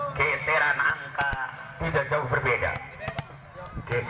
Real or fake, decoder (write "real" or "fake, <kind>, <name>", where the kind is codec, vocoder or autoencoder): real